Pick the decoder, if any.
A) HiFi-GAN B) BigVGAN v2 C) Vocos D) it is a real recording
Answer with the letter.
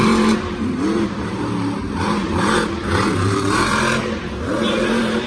B